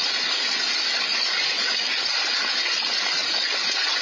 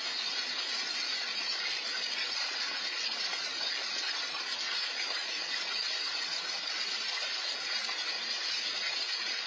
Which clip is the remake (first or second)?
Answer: second